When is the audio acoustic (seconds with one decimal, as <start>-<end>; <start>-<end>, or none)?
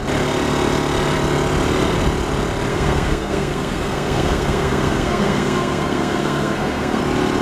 0.0-2.7; 7.0-7.4